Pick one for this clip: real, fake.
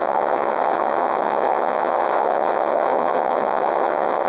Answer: fake